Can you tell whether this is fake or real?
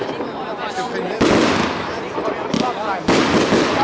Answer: real